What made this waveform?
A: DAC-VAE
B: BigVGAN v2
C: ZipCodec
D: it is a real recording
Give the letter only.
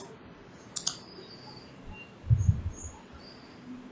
D